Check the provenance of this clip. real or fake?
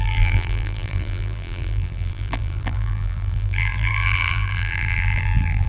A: fake